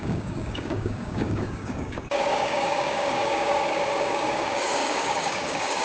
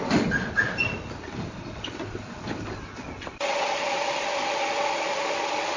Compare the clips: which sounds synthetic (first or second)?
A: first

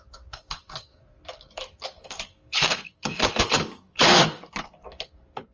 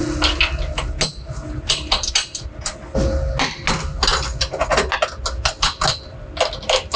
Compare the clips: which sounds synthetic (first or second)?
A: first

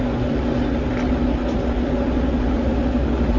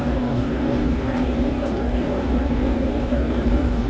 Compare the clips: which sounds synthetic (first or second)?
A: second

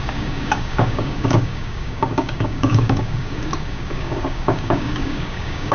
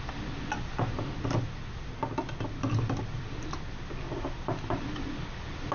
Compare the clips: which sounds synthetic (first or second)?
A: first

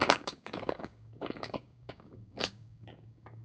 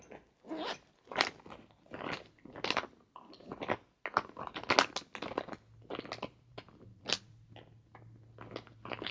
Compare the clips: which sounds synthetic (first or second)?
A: first